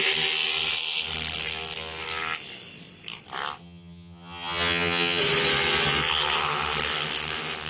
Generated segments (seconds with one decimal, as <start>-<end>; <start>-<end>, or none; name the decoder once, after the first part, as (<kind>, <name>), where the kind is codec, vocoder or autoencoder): 3.6-5.2 (vocoder, HiFi-GAN)